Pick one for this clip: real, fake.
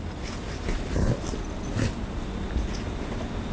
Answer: real